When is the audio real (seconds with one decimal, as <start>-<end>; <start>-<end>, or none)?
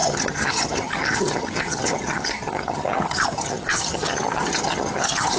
none